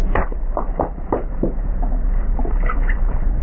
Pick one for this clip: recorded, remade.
remade